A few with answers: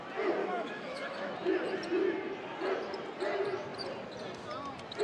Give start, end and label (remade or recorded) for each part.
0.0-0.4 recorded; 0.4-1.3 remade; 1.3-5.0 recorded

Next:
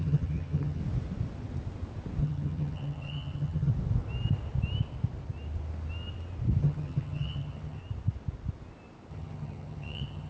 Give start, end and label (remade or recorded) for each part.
0.0-0.8 remade; 0.8-2.2 recorded; 2.2-3.7 remade; 3.7-6.6 recorded; 6.6-7.8 remade; 7.8-9.1 recorded; 9.1-10.3 remade

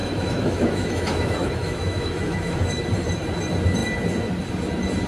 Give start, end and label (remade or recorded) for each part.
0.0-2.7 remade; 2.7-5.1 recorded

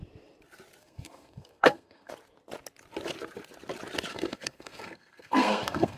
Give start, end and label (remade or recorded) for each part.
0.0-0.8 recorded; 0.8-2.1 remade; 2.1-4.1 recorded; 4.1-6.0 remade

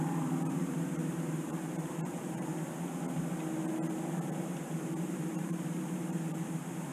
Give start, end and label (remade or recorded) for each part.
0.0-2.5 remade; 2.5-5.0 recorded; 5.0-6.9 remade

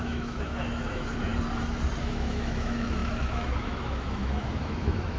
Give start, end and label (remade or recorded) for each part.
0.0-1.3 remade; 1.3-2.0 recorded; 2.0-5.2 remade

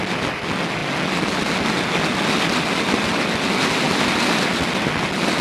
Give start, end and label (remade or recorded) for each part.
0.0-5.4 recorded